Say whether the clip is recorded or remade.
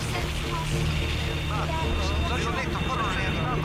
recorded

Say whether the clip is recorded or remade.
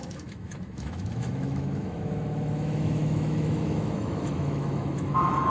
remade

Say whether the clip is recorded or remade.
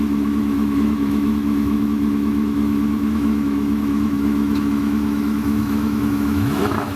remade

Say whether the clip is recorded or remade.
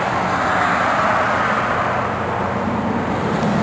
recorded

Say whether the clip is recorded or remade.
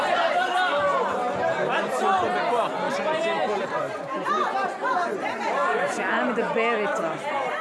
recorded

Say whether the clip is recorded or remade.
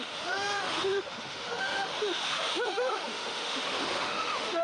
remade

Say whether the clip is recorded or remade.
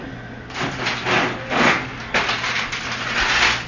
recorded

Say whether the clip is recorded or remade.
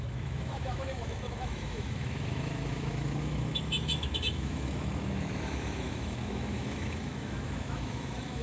remade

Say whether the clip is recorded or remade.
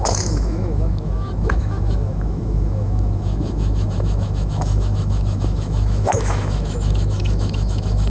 remade